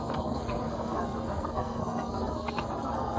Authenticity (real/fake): fake